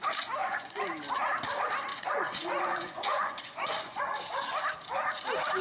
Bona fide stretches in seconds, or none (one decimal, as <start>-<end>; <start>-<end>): 0.0-0.4; 0.9-1.9; 4.0-5.6